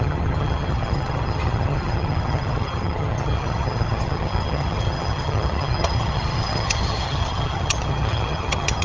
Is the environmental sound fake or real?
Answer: fake